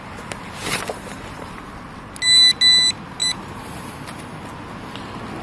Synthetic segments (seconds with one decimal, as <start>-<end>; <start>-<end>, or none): 0.6-1.8; 3.2-3.9